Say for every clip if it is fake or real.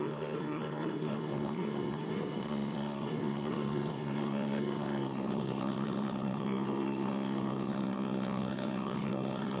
fake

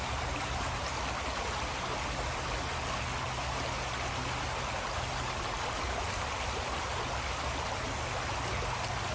real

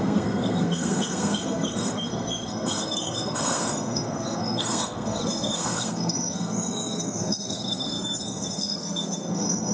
fake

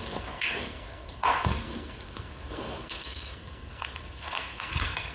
fake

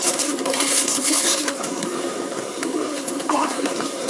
fake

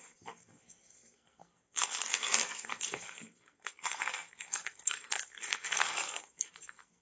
fake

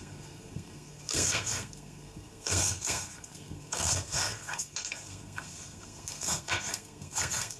fake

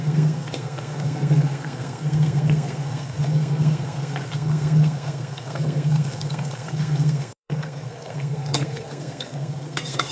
fake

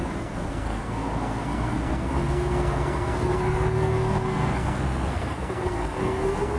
fake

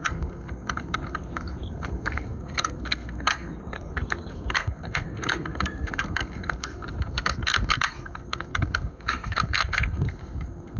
fake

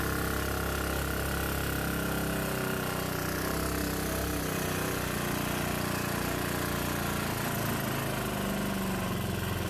real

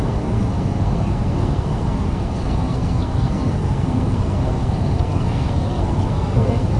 fake